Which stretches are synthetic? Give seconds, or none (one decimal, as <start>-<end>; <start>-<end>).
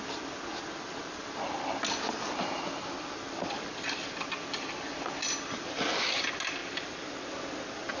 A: none